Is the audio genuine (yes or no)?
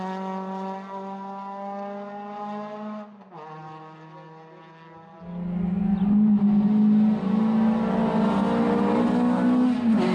yes